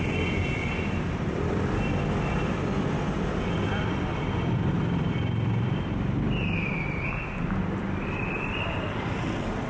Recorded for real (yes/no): no